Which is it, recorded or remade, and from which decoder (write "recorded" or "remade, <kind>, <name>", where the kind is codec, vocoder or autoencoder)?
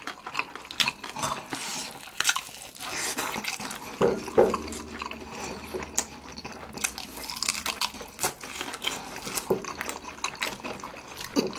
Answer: recorded